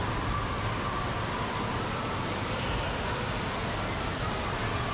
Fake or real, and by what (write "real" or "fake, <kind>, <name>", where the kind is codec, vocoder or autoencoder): real